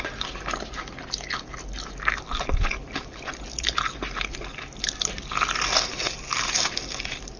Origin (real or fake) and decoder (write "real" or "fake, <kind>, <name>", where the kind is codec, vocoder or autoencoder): real